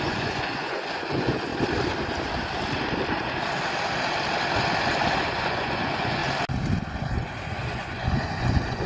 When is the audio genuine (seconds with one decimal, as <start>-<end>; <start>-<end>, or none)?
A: 1.5-5.2; 6.2-7.0